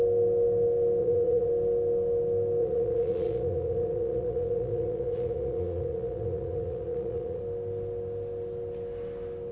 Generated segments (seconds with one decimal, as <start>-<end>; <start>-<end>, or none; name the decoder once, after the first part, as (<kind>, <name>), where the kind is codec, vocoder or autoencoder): 1.0-1.5 (vocoder, Vocos); 2.6-7.4